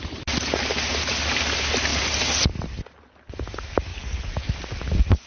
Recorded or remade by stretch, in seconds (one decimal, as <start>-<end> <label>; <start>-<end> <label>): 0.0-5.3 recorded